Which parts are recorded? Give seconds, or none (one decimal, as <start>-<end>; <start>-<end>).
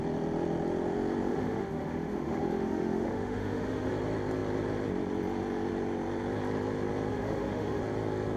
0.0-1.3; 3.9-7.1; 7.8-8.4